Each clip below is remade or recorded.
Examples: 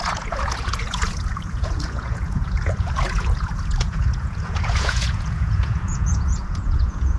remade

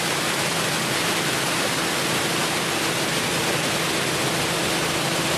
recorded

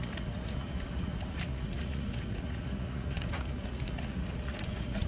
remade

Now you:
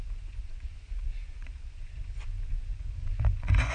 remade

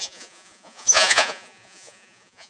remade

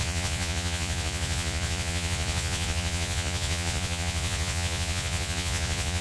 remade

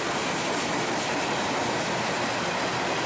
recorded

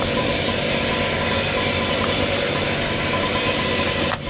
recorded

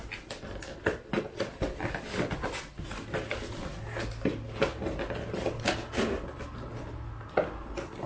recorded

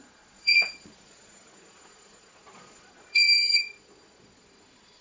remade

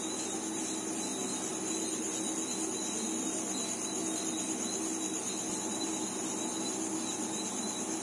recorded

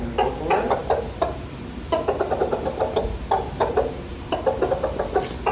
recorded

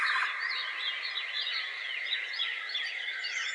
recorded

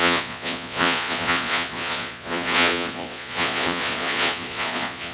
remade